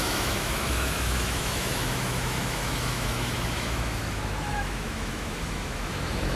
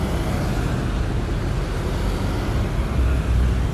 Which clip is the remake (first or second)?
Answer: first